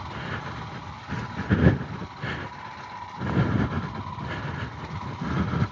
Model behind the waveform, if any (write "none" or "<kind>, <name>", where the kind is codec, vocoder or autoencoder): none